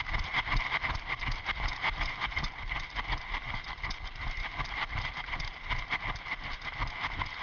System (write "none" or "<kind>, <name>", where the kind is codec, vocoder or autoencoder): none